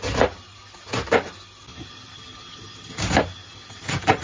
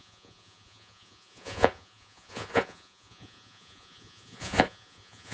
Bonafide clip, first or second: first